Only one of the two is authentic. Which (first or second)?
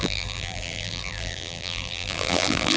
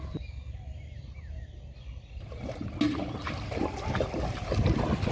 second